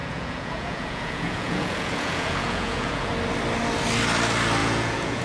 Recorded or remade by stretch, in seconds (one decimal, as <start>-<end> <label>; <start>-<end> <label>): 0.0-3.1 remade; 3.1-4.6 recorded; 4.6-5.2 remade

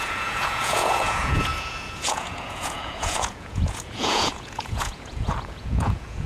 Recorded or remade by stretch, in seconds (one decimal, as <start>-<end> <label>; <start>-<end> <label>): 0.0-6.3 remade

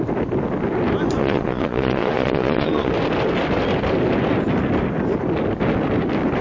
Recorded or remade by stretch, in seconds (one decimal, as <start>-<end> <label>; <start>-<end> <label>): 0.0-1.2 recorded; 1.2-2.9 remade; 2.9-6.4 recorded

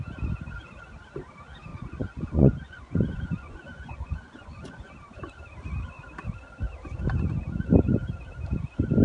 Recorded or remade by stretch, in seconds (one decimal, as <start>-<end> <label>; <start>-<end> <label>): 0.0-1.7 recorded; 1.7-4.9 remade; 4.9-9.0 recorded

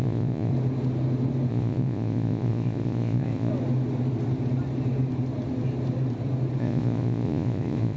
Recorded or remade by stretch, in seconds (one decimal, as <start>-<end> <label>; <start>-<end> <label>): 0.0-0.5 remade; 0.5-1.5 recorded; 1.5-3.5 remade; 3.5-6.6 recorded; 6.6-8.0 remade